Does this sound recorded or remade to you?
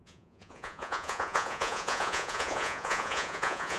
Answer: remade